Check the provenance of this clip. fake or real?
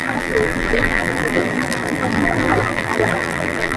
fake